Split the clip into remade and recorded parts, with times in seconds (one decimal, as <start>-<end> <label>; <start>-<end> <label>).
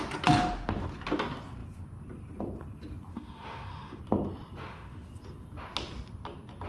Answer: 0.0-3.1 recorded; 3.1-4.0 remade; 4.0-4.6 recorded; 4.6-5.1 remade; 5.1-6.7 recorded